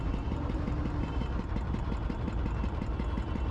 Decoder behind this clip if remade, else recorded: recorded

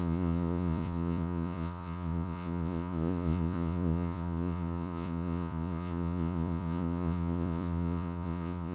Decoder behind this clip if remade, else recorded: remade, vocoder, Vocos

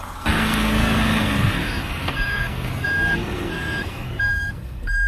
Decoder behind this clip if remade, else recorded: remade, codec, SNAC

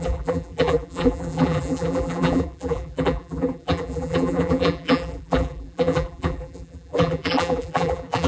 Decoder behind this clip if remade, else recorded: remade, vocoder, BigVGAN v2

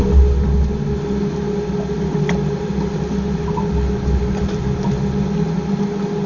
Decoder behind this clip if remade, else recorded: recorded